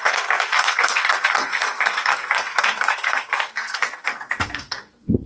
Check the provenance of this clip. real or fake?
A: fake